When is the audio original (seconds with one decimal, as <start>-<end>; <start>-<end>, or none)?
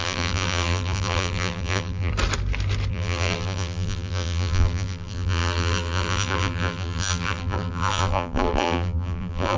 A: 2.1-2.9